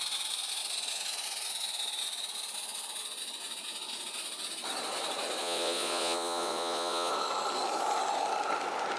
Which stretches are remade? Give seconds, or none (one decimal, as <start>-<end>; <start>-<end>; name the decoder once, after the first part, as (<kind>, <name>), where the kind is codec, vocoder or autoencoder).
5.4-7.1 (vocoder, Vocos)